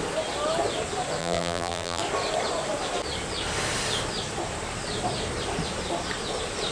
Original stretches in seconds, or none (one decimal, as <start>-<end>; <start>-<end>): 0.0-1.2; 2.0-6.7